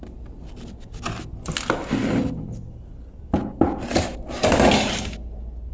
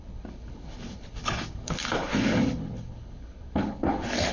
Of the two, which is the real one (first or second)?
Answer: first